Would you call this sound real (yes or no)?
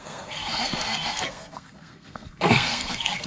no